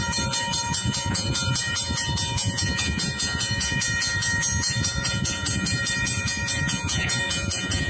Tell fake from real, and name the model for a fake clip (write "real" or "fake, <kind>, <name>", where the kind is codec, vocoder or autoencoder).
fake, vocoder, Vocos